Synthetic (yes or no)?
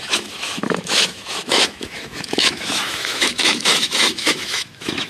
yes